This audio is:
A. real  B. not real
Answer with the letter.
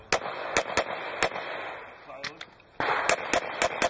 A